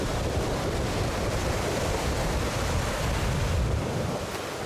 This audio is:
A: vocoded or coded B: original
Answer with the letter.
B